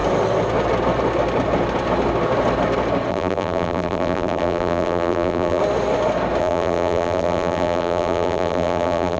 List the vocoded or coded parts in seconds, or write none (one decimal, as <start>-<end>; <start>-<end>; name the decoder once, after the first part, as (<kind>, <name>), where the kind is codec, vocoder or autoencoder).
3.1-5.6 (vocoder, BigVGAN v2); 6.4-9.2